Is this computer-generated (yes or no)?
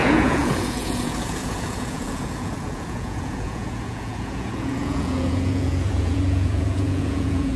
yes